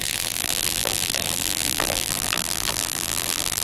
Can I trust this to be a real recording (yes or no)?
no